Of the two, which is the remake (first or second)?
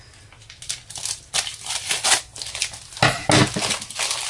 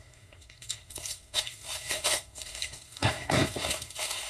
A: second